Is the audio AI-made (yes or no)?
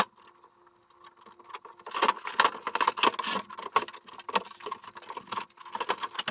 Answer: no